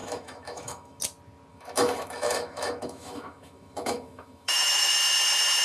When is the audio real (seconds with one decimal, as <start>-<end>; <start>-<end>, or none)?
1.0-1.5; 4.9-5.6